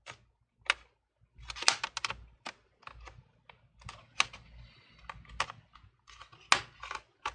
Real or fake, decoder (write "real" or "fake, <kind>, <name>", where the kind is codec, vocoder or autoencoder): real